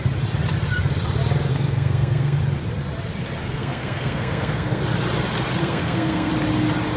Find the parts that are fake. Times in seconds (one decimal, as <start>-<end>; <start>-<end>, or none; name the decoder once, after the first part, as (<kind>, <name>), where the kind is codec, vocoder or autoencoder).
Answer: 1.5-2.4 (codec, SNAC); 3.4-4.8; 5.6-6.3